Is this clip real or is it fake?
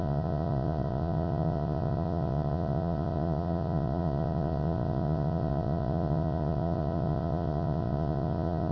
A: fake